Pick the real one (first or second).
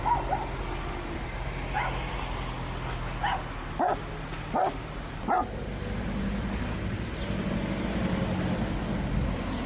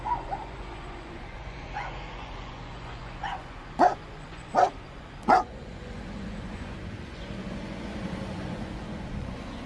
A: first